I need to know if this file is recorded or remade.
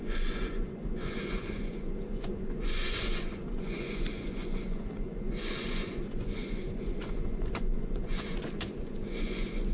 remade